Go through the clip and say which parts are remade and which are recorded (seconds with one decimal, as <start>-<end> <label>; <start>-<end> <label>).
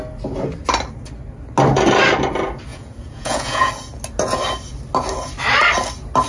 0.0-2.7 recorded; 2.7-3.7 remade; 3.7-6.3 recorded